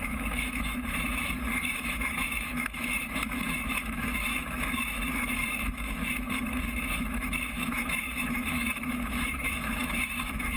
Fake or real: fake